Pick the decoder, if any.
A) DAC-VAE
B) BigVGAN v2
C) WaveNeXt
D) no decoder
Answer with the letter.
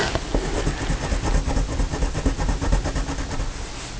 D